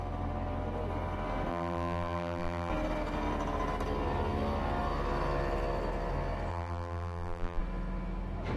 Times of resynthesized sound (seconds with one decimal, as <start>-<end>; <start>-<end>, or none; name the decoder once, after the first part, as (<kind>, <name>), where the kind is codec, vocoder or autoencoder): 1.5-2.7 (vocoder, BigVGAN v2); 6.5-7.6